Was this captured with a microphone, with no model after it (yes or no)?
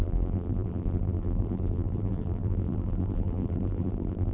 no